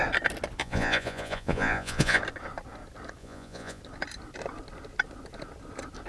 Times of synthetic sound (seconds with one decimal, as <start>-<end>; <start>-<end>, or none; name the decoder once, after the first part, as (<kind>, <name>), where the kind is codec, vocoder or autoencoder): 0.6-2.2 (vocoder, Vocos); 3.2-3.8